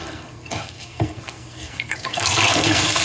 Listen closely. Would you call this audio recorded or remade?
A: remade